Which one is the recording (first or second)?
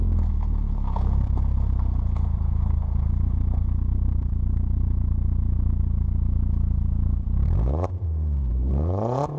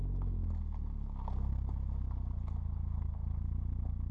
second